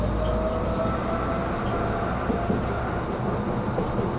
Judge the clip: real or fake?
real